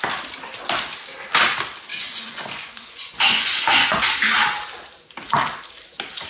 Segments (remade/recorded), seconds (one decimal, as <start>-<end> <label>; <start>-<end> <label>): 0.0-1.9 recorded; 1.9-4.0 remade; 4.0-6.3 recorded